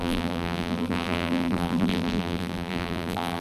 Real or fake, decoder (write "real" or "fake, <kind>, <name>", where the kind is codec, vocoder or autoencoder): fake, vocoder, BigVGAN v2